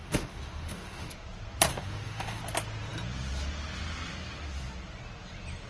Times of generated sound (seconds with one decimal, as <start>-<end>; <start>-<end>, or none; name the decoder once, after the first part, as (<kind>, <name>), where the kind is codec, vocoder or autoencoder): 0.0-1.1 (autoencoder, DAC-VAE); 1.7-2.4

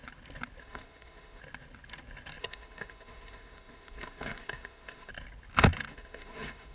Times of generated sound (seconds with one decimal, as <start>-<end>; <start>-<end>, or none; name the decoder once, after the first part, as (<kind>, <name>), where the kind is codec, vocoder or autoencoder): 0.6-1.4 (autoencoder, DAC-VAE); 2.4-5.1; 5.9-6.7